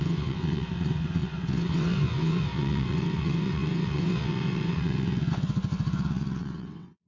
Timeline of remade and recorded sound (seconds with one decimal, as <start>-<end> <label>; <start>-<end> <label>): 0.0-7.1 remade